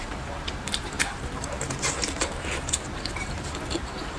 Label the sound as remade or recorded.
remade